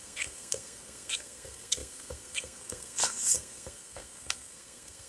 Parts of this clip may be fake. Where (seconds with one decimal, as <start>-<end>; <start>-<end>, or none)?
0.0-5.1